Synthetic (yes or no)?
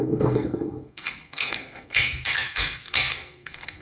yes